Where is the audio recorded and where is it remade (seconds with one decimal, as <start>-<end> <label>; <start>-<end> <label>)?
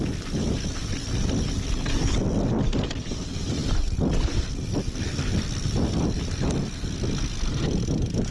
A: 0.0-8.3 recorded